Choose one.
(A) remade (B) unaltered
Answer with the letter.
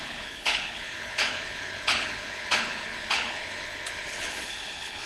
A